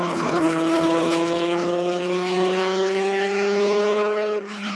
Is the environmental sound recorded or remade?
remade